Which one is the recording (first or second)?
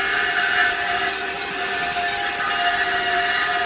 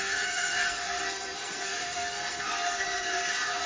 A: first